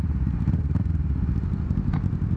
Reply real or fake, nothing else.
real